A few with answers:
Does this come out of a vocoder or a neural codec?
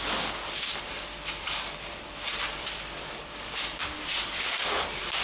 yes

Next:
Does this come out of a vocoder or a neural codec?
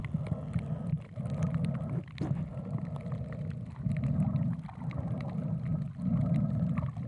no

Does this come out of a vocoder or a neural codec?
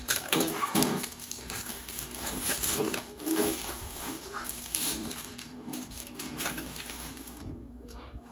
yes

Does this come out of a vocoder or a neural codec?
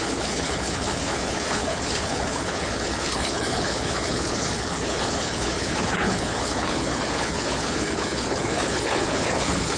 yes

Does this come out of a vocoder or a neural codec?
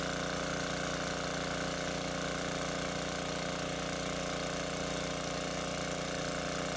no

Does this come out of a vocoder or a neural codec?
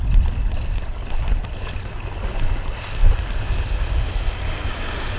no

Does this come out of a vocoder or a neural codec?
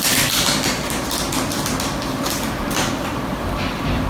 no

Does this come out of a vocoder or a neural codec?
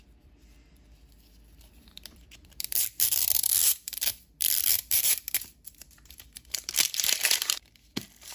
yes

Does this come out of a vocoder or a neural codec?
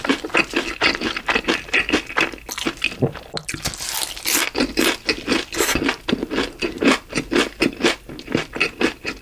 no